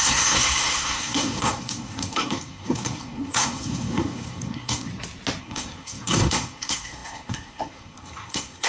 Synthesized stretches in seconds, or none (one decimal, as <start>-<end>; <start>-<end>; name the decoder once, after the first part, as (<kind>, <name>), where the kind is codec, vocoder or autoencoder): 0.0-4.9 (codec, SNAC); 5.4-8.7